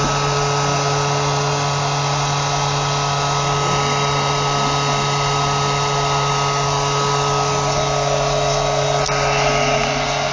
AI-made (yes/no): no